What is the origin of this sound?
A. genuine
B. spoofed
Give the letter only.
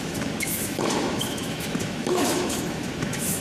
B